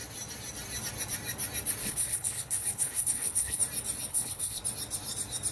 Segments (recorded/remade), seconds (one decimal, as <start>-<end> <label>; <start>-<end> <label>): 0.0-1.8 recorded; 1.8-3.6 remade; 3.6-4.1 recorded; 4.1-4.6 remade; 4.6-5.5 recorded